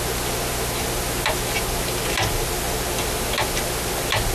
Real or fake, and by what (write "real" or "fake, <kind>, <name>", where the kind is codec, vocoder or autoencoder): real